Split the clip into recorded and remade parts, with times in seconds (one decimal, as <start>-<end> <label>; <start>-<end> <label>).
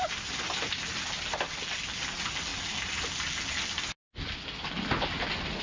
0.0-5.6 recorded